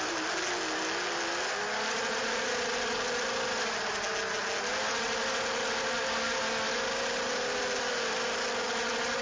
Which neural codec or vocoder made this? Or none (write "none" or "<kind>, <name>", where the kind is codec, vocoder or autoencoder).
none